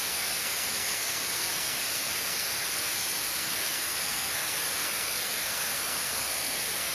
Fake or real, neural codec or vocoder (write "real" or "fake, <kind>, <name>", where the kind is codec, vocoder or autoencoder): fake, codec, SNAC